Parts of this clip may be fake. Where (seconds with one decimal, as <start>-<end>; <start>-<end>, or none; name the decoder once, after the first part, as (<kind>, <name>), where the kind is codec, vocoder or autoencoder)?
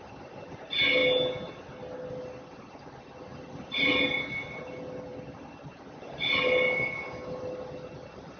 3.3-4.0 (vocoder, BigVGAN v2)